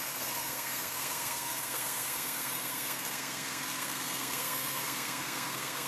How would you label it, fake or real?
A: fake